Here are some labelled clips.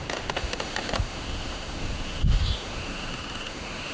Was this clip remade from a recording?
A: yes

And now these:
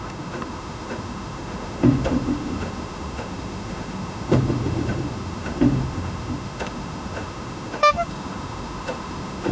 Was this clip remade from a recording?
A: yes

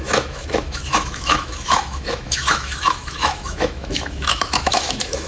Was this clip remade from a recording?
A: yes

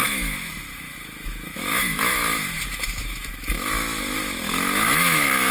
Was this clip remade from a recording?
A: yes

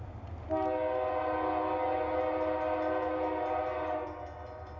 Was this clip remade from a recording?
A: no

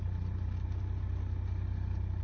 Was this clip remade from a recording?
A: no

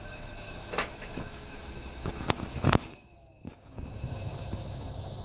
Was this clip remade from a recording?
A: yes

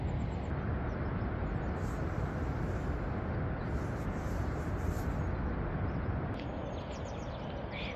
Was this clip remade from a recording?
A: no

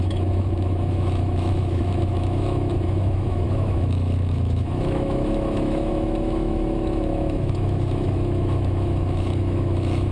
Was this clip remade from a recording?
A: yes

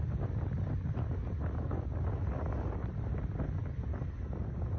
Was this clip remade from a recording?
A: no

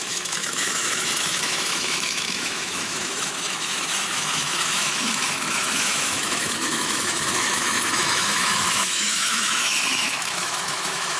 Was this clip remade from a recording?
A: yes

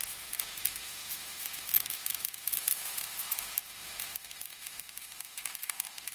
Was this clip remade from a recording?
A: yes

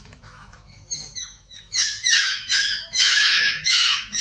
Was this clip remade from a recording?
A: yes